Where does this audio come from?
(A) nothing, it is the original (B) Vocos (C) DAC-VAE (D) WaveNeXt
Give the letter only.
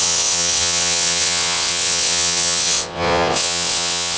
D